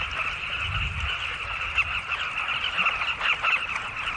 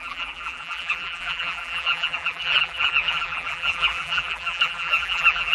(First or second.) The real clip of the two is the first